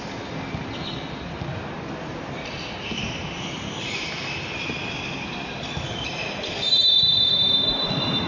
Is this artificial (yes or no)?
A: no